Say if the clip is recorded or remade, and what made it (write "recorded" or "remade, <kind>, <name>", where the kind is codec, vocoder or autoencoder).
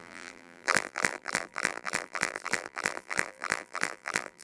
remade, vocoder, BigVGAN v2